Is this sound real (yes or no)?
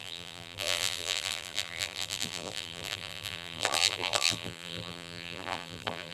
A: no